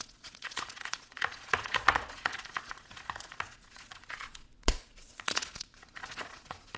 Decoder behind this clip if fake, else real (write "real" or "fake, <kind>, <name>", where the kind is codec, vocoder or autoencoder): fake, vocoder, Vocos